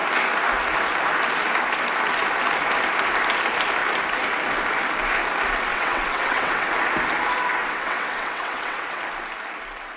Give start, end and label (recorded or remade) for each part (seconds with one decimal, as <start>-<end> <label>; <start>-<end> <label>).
0.0-5.7 recorded; 5.7-6.7 remade; 6.7-7.6 recorded; 7.6-9.0 remade; 9.0-10.0 recorded